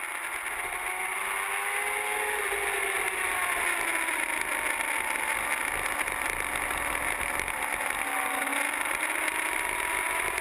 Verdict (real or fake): real